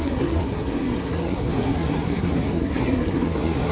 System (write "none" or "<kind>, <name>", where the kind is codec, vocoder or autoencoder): codec, SNAC